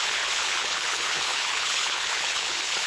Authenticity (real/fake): fake